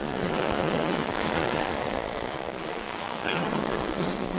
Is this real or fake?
fake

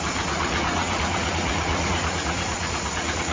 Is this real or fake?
fake